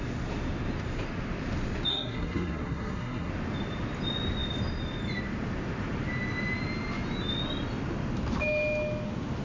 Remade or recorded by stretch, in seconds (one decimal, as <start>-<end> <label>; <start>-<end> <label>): 0.0-1.9 recorded; 1.9-3.3 remade; 3.3-9.4 recorded